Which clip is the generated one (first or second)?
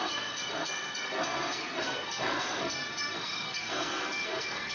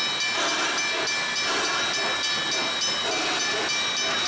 first